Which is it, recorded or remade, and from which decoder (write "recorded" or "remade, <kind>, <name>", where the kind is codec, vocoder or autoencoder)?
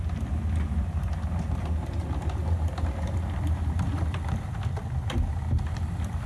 recorded